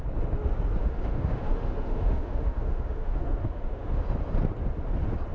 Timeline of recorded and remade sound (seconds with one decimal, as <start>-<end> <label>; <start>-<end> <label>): 0.0-0.8 recorded; 0.8-4.0 remade; 4.0-5.3 recorded